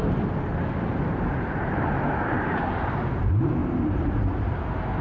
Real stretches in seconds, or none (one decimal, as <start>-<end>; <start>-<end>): 0.0-0.9; 3.2-3.6; 4.5-5.0